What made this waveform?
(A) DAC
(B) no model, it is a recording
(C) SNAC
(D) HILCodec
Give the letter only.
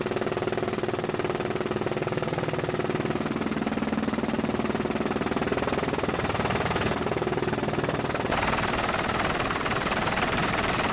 B